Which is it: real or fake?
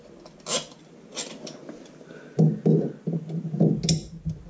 real